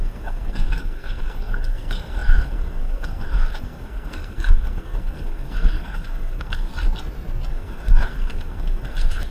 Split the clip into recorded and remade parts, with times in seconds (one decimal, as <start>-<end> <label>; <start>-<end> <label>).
0.0-6.7 remade; 6.7-7.5 recorded; 7.5-9.3 remade